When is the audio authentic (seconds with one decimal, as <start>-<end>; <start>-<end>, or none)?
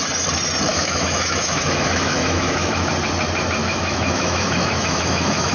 0.0-0.7; 2.9-3.6